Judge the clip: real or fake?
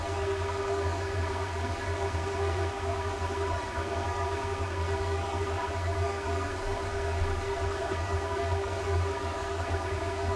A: fake